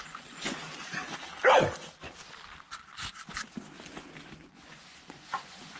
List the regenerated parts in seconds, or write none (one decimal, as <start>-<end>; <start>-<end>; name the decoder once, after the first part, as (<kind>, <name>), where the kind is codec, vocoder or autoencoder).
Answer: 0.0-1.0 (vocoder, Vocos); 4.5-5.8